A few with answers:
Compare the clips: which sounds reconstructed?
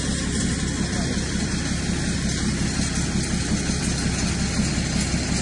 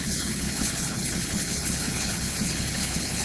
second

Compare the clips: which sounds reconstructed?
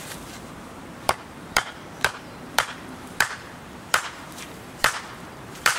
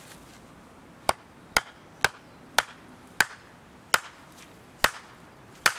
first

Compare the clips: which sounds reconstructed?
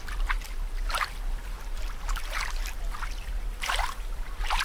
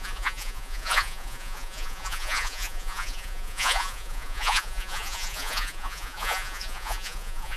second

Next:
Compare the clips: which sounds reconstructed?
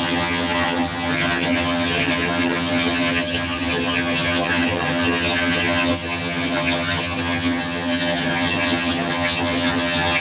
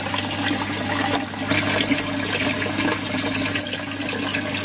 first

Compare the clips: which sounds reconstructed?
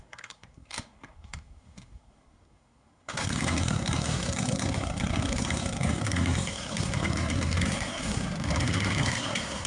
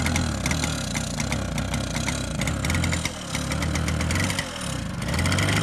first